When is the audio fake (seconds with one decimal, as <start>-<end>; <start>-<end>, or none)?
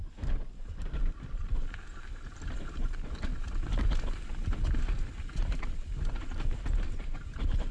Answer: none